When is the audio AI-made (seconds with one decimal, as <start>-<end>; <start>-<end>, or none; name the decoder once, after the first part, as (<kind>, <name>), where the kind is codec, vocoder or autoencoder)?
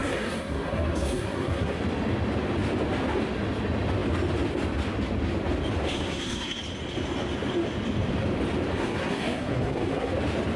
0.0-1.8 (codec, SNAC); 5.9-6.6; 8.7-10.1